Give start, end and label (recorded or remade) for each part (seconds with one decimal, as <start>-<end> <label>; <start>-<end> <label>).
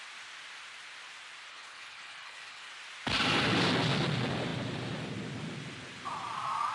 0.0-1.5 recorded; 1.5-2.7 remade; 2.7-6.7 recorded